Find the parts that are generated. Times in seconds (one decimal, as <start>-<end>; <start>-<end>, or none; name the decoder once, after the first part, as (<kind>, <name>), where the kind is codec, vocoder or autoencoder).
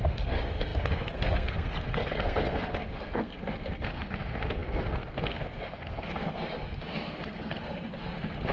0.0-8.5 (codec, SNAC)